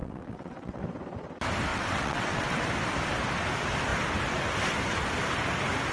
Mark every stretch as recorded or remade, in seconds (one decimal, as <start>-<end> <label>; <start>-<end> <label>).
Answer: 0.0-0.8 remade; 0.8-1.7 recorded; 1.7-2.6 remade; 2.6-5.9 recorded